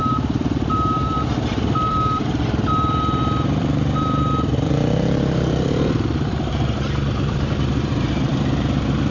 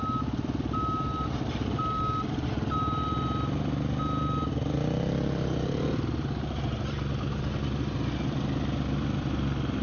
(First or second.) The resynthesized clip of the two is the first